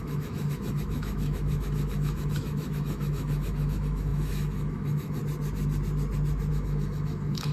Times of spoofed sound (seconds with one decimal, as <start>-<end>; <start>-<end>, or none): 0.0-5.2; 6.5-7.5